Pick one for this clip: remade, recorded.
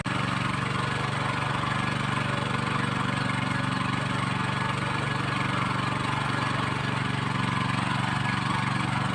recorded